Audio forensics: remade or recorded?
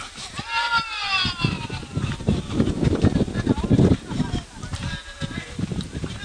recorded